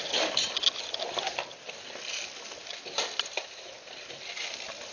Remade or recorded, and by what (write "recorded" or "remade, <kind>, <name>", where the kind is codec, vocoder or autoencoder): recorded